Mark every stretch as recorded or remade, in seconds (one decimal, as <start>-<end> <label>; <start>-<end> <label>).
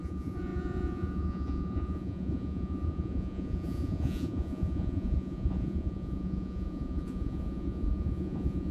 0.0-8.7 remade